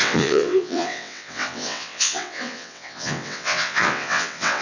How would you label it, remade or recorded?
remade